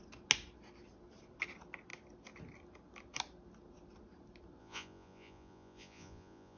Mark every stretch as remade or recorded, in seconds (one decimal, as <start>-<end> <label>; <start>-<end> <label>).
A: 0.0-4.6 recorded; 4.6-6.6 remade